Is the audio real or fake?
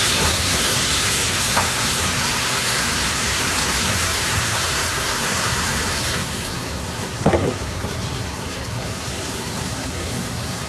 fake